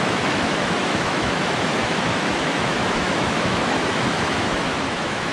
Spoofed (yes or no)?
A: yes